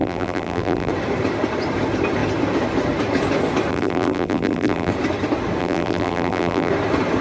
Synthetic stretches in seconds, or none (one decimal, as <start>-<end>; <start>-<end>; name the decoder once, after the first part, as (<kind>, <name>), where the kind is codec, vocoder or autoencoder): 0.0-0.9 (vocoder, BigVGAN v2); 3.7-4.9; 5.6-6.7